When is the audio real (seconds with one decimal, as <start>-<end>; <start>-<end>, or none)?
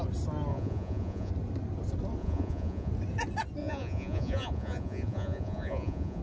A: 0.0-0.5; 1.3-2.2; 2.9-3.6